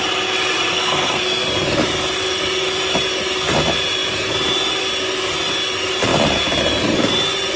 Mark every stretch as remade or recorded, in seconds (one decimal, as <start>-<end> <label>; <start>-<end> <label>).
0.0-0.7 recorded; 0.7-1.5 remade; 1.5-7.6 recorded